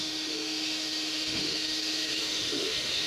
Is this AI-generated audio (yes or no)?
yes